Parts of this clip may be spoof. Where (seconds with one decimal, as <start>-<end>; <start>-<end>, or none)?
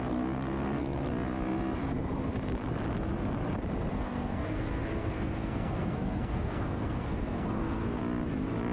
3.9-8.0